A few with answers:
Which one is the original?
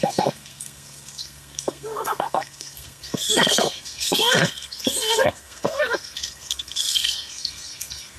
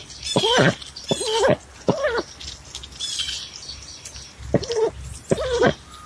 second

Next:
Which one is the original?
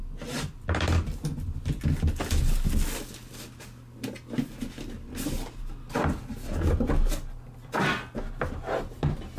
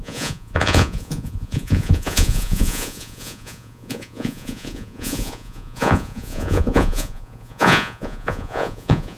first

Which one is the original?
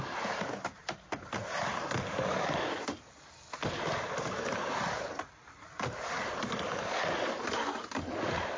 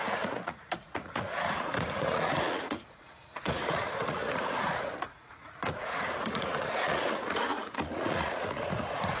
first